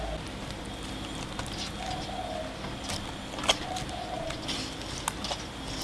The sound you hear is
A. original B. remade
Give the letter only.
A